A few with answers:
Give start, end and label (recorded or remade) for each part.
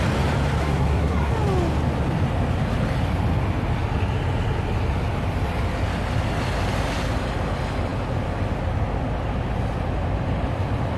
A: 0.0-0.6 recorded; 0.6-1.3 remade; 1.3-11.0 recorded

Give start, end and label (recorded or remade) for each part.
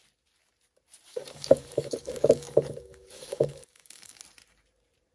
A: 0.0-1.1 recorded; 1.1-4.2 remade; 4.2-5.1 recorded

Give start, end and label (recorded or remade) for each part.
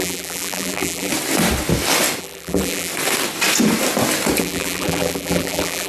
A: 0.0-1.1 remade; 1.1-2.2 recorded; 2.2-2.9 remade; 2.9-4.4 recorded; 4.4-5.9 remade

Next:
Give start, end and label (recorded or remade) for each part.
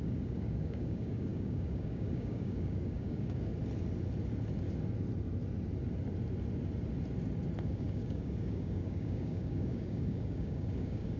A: 0.0-3.5 remade; 3.5-7.7 recorded; 7.7-11.2 remade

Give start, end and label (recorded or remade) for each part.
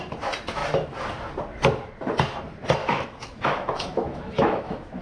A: 0.0-2.8 recorded; 2.8-5.0 remade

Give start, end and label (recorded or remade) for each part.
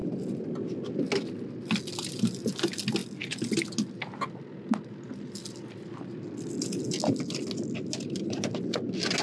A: 0.0-9.2 recorded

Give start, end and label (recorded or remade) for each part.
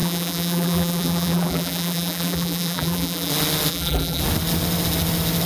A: 0.0-3.3 remade; 3.3-3.7 recorded; 3.7-4.2 remade; 4.2-5.5 recorded